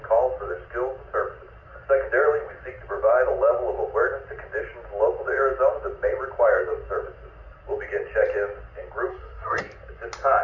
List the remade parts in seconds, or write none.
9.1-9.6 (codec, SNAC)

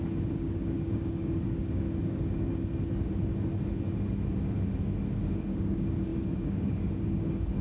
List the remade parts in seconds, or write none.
0.0-2.5 (codec, DAC); 5.2-7.6

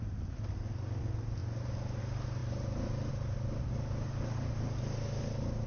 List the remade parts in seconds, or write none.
none

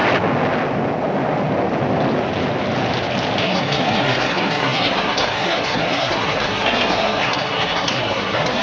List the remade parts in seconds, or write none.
3.4-8.6 (codec, SNAC)

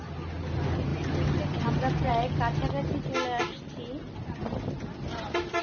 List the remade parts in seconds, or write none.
none